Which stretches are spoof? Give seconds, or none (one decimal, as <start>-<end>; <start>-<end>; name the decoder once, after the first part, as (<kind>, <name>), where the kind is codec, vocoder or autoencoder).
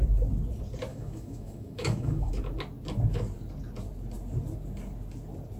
0.9-2.3 (autoencoder, DAC-VAE)